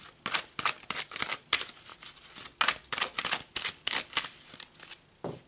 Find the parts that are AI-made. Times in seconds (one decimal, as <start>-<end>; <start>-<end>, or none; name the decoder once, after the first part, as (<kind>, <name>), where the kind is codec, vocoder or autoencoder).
none